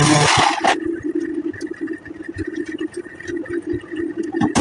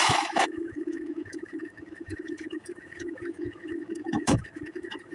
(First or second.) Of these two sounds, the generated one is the second